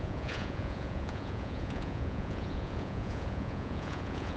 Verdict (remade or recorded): remade